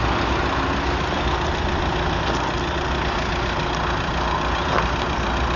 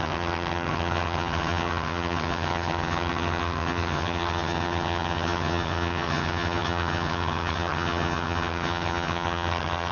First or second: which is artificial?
second